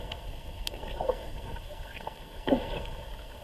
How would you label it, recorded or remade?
remade